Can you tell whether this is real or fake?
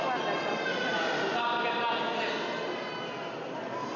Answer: real